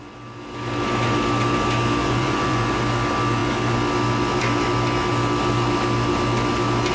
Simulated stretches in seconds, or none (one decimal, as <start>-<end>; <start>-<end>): 2.0-2.8